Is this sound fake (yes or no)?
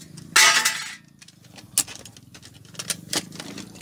no